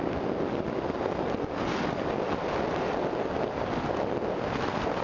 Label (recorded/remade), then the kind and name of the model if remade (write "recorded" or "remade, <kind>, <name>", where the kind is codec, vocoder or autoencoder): recorded